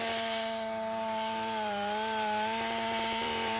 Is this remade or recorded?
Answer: remade